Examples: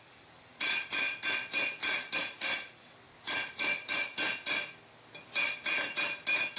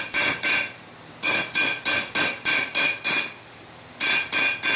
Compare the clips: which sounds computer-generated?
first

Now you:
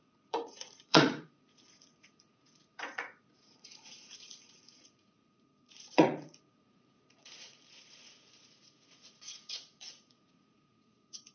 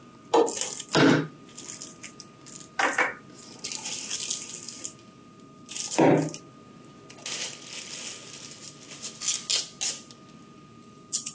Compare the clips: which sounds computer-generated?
first